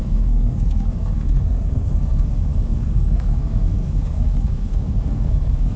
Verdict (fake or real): fake